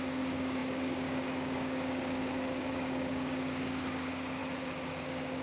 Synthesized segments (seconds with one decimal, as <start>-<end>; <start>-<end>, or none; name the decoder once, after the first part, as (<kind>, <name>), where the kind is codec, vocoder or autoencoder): 0.0-4.4 (codec, DAC); 5.0-5.4